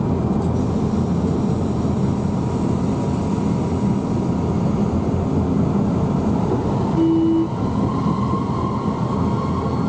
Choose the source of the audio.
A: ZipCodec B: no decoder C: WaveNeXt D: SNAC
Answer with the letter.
B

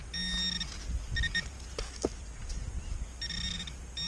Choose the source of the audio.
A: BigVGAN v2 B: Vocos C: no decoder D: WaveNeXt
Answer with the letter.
C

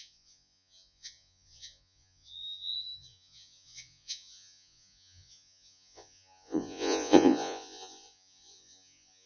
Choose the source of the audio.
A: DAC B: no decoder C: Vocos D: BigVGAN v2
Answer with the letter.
C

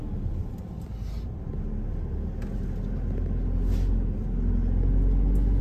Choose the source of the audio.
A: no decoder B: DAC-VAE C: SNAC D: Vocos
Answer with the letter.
A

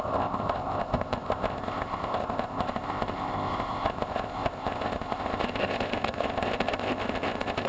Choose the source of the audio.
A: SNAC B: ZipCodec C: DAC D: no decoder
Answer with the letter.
B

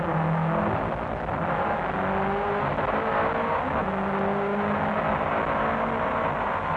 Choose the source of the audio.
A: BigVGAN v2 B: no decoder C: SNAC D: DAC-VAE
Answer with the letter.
B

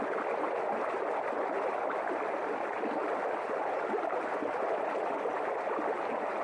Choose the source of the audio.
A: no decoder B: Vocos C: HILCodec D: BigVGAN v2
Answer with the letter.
A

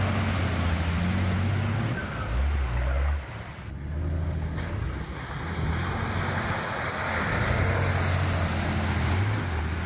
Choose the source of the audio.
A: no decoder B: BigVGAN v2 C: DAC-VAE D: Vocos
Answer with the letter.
A